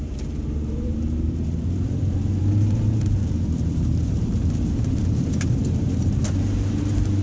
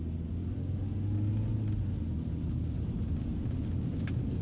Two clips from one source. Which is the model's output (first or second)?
first